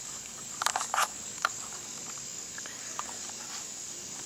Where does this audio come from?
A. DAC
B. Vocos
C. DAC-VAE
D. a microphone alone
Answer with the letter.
A